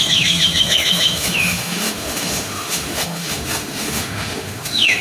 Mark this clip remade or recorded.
remade